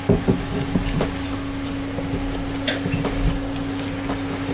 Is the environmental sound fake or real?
real